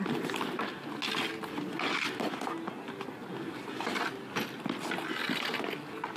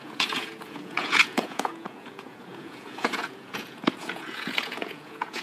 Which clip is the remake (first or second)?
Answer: second